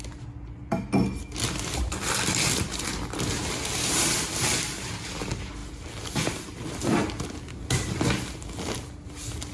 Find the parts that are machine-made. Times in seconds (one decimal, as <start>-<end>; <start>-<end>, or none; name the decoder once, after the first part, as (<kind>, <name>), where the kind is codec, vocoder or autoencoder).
none